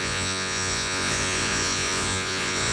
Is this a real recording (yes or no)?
no